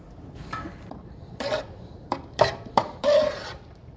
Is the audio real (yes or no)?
no